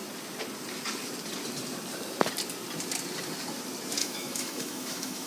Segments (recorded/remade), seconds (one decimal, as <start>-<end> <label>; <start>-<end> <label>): 0.0-4.0 recorded; 4.0-5.3 remade